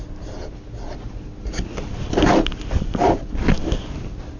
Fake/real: real